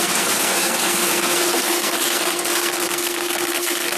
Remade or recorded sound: remade